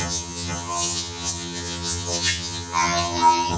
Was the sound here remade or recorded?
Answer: remade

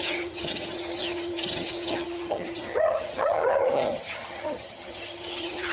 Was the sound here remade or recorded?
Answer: remade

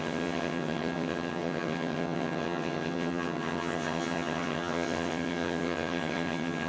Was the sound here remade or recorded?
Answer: remade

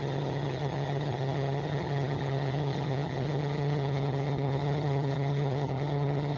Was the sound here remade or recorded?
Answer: remade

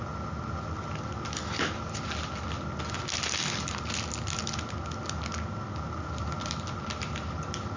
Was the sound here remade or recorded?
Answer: recorded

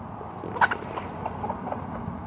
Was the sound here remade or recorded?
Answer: recorded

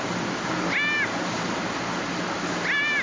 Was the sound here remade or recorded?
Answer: recorded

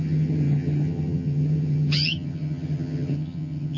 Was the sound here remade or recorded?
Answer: remade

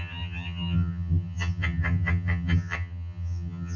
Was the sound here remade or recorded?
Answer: remade